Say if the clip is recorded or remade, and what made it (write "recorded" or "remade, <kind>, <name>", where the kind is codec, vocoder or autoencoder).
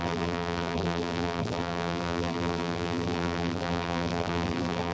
remade, vocoder, BigVGAN v2